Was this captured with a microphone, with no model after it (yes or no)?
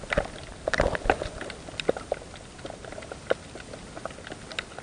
yes